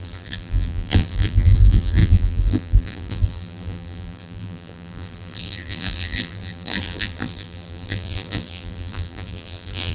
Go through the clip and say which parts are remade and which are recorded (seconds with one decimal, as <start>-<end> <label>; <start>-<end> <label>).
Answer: 0.0-9.9 remade

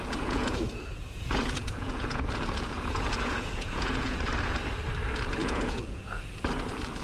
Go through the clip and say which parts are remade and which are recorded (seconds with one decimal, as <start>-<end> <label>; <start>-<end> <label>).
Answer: 0.0-4.2 remade; 4.2-5.4 recorded; 5.4-6.3 remade; 6.3-7.0 recorded

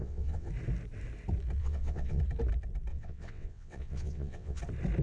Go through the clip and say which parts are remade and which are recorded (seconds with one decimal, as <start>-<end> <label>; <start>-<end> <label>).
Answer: 0.0-0.5 remade; 0.5-1.6 recorded; 1.6-2.2 remade; 2.2-2.9 recorded; 2.9-4.6 remade; 4.6-5.0 recorded

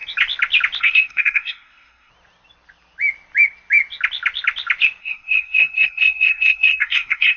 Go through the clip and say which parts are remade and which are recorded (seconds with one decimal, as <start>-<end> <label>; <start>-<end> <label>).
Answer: 0.0-0.8 recorded; 0.8-2.1 remade; 2.1-5.0 recorded; 5.0-7.4 remade

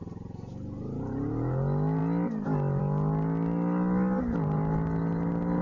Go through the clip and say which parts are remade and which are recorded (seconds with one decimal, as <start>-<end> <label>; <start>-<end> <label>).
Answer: 0.0-5.6 recorded

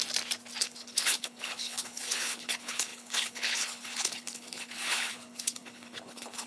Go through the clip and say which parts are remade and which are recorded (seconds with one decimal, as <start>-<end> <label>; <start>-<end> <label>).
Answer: 0.0-0.6 recorded; 0.6-6.5 remade

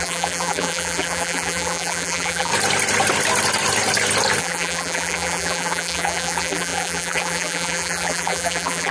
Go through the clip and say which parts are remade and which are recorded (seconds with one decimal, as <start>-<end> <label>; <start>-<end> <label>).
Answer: 0.0-2.5 remade; 2.5-4.4 recorded; 4.4-8.9 remade

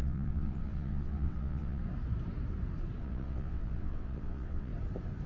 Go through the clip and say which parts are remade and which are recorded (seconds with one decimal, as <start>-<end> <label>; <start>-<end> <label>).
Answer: 0.0-1.8 remade; 1.8-3.0 recorded; 3.0-4.7 remade; 4.7-5.3 recorded